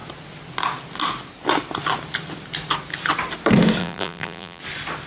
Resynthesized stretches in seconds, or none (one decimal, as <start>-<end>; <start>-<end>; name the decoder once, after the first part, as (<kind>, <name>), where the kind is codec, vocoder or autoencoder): 3.8-4.6 (vocoder, BigVGAN v2)